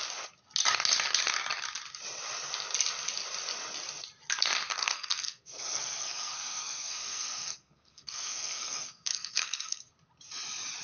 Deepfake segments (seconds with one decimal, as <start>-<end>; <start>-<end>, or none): 4.7-9.9